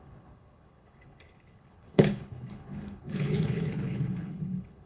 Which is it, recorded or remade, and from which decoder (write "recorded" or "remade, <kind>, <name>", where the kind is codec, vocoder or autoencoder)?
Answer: remade, codec, HILCodec